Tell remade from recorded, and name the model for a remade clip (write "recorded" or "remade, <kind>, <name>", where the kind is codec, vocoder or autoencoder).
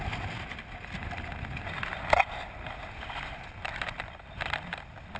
recorded